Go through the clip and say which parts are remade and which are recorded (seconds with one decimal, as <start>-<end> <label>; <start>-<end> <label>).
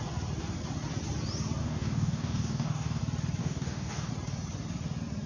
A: 0.0-1.6 recorded; 1.6-3.0 remade; 3.0-3.4 recorded; 3.4-4.1 remade; 4.1-5.3 recorded